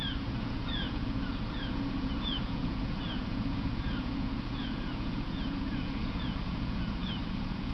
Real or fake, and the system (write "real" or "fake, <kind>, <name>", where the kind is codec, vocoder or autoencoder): fake, vocoder, Vocos